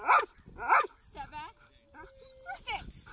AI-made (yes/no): no